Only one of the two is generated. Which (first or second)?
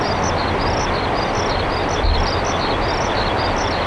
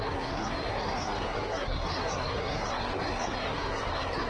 second